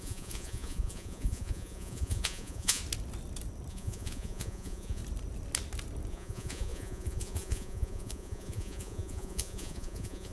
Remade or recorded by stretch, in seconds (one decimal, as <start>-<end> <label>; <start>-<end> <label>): 0.0-2.8 remade; 2.8-3.7 recorded; 3.7-5.0 remade; 5.0-6.1 recorded; 6.1-10.3 remade